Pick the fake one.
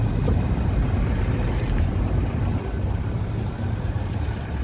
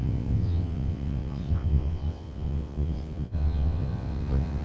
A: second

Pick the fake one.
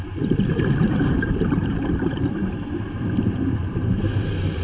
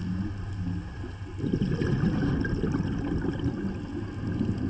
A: first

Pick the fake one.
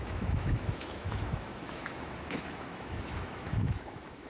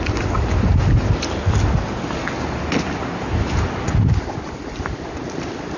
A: first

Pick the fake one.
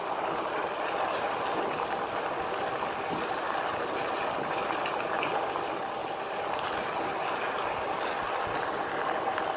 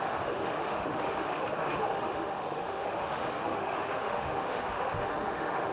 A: second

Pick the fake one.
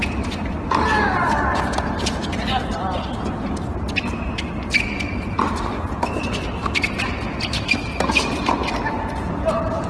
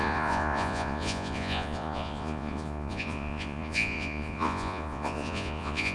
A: second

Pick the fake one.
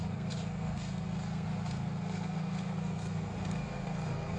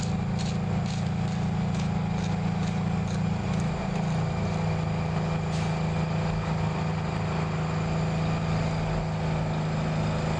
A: first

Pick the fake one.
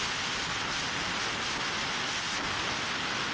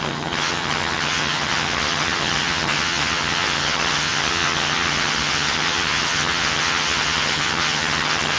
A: second